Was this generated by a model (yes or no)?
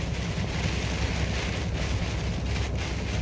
no